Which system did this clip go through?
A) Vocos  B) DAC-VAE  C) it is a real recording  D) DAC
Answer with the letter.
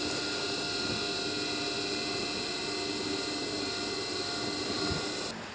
C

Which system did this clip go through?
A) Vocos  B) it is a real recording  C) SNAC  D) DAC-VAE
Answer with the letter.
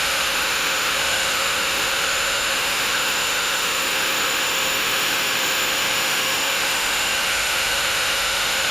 D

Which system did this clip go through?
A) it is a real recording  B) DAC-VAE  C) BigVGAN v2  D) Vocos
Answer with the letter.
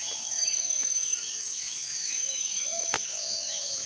B